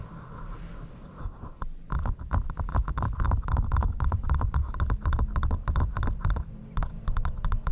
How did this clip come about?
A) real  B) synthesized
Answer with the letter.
A